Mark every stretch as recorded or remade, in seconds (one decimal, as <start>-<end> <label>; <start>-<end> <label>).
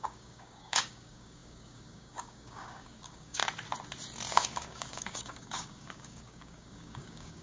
0.0-3.4 remade; 3.4-4.3 recorded; 4.3-7.4 remade